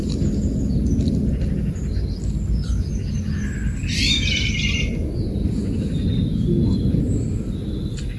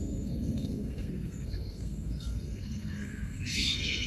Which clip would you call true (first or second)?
first